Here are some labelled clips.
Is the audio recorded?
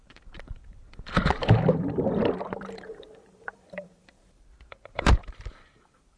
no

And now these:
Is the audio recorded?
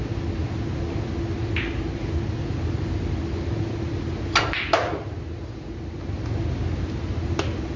yes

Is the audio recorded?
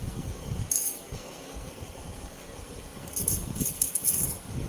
no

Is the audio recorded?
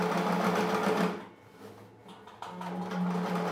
yes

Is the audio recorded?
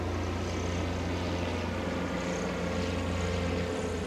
yes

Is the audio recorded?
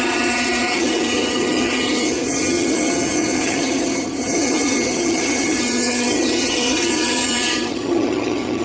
no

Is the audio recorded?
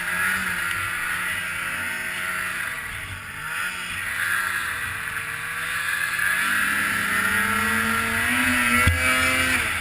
yes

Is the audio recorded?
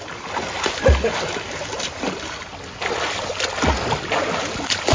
yes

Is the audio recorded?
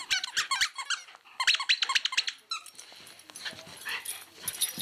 yes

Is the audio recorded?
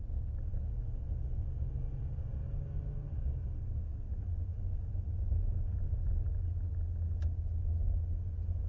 yes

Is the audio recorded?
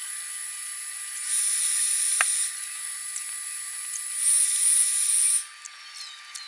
yes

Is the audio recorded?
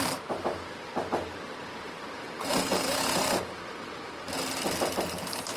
no